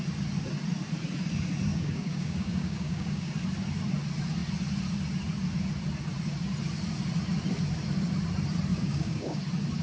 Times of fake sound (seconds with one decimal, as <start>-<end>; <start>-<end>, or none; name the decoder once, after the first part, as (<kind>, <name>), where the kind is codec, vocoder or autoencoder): 1.7-3.3 (codec, DAC); 8.7-9.4

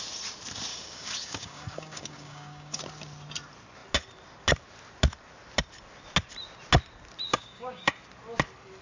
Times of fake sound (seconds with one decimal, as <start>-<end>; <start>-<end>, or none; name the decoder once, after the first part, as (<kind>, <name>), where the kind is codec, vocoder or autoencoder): 0.7-2.8 (codec, DAC); 7.3-7.9

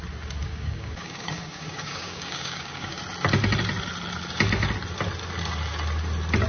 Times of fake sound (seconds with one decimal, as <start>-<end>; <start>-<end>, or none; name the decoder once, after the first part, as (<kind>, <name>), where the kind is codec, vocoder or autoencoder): 0.4-3.0 (codec, DAC)

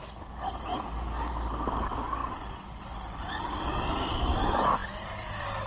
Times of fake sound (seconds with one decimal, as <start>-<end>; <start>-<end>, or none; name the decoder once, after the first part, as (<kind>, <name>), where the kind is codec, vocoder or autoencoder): 0.7-1.3 (codec, DAC)

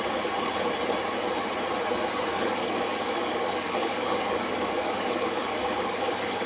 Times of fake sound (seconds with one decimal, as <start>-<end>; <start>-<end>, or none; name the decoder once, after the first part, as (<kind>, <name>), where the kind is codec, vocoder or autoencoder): 2.3-6.5 (codec, DAC)